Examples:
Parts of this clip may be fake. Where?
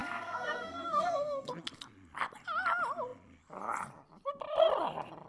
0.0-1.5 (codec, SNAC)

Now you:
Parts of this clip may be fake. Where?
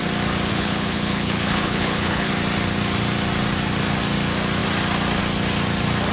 0.5-2.3 (codec, HILCodec)